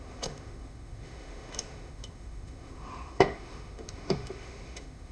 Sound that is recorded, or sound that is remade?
remade